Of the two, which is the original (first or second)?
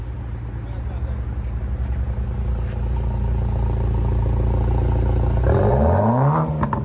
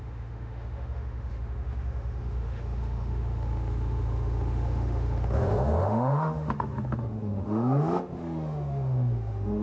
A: first